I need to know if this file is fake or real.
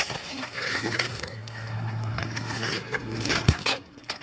fake